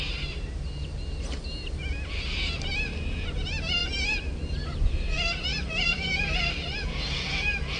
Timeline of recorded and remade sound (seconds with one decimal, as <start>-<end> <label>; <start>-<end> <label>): 0.0-1.5 recorded; 1.5-2.7 remade; 2.7-5.5 recorded; 5.5-7.3 remade; 7.3-7.8 recorded